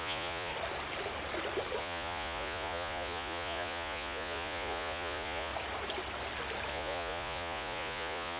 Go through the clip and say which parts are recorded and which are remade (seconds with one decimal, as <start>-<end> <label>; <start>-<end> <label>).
0.0-0.5 remade; 0.5-1.8 recorded; 1.8-5.5 remade; 5.5-6.7 recorded; 6.7-8.4 remade